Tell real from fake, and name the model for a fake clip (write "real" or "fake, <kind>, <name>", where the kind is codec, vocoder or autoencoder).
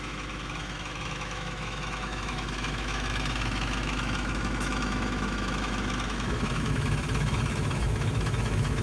fake, autoencoder, DAC-VAE